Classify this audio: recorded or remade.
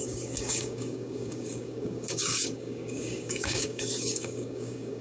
remade